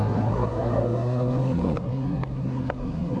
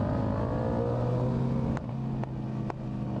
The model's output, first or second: first